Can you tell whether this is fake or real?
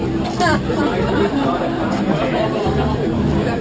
real